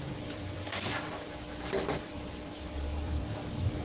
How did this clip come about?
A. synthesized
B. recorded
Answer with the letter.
A